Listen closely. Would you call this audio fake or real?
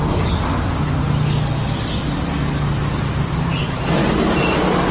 real